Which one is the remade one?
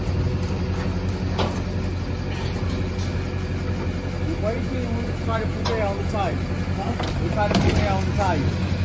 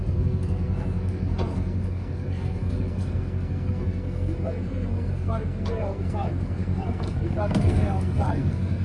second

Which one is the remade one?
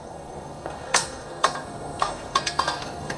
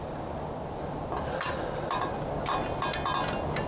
first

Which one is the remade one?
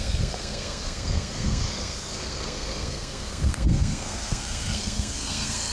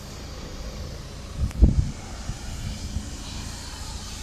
first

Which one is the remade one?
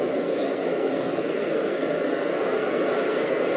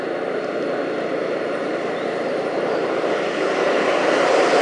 first